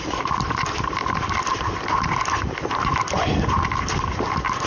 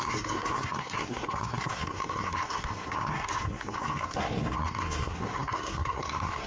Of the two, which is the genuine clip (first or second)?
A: first